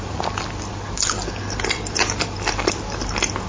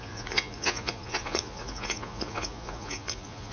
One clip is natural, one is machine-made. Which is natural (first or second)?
first